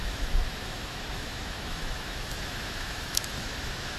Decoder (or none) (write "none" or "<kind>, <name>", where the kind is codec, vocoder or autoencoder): autoencoder, DAC-VAE